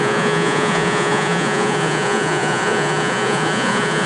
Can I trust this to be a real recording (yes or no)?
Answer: no